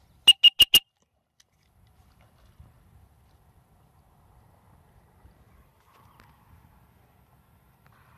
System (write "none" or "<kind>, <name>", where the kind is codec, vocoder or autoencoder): none